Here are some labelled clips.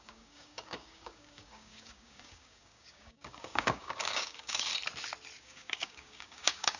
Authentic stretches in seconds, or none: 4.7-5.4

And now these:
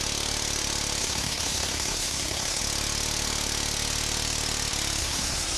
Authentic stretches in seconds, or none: 0.0-1.0; 2.6-5.0

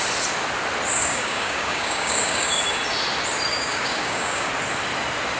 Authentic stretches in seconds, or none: 0.0-1.0; 2.6-3.5; 4.5-5.4

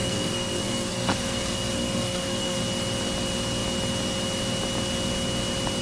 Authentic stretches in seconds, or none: 2.6-5.8